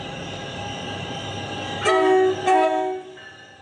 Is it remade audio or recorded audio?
recorded